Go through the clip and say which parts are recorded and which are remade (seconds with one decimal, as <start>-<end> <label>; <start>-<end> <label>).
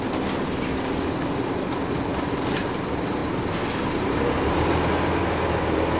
0.0-6.0 recorded